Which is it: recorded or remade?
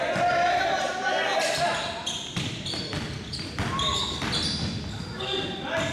recorded